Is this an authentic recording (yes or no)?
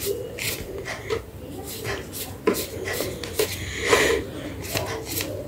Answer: yes